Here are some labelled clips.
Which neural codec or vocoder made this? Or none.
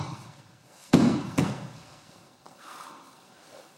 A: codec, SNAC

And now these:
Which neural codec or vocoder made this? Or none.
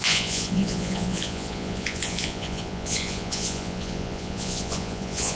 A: vocoder, Vocos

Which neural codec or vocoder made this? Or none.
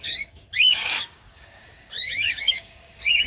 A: codec, DAC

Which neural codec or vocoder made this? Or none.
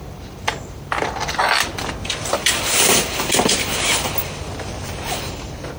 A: none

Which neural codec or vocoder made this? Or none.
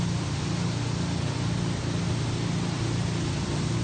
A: none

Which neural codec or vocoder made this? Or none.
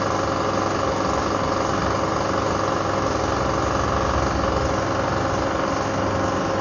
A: none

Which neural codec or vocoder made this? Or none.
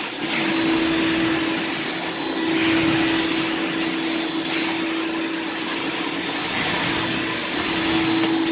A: none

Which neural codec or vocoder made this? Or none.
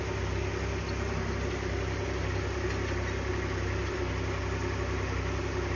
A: none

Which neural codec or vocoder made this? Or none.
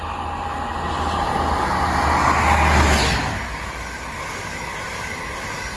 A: none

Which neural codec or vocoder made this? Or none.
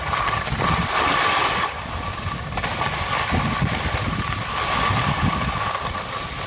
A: none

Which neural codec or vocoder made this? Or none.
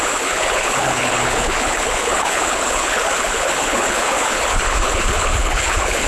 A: codec, HILCodec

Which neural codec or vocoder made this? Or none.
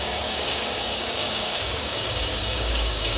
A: codec, DAC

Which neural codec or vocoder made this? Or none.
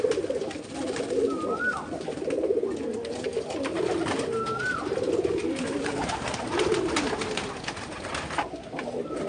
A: none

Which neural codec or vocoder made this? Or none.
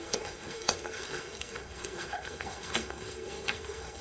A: codec, SNAC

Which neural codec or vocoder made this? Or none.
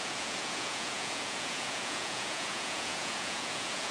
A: vocoder, Vocos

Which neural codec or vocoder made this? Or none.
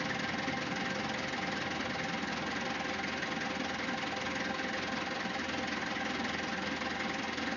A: none